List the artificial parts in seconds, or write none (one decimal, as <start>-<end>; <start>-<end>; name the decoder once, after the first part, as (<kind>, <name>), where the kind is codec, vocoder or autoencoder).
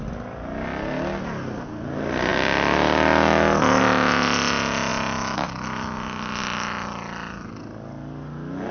none